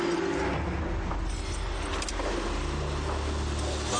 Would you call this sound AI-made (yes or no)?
no